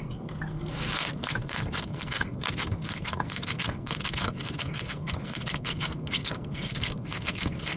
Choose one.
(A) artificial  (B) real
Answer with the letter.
A